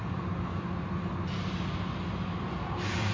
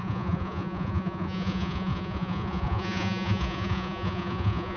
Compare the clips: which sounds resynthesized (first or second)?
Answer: second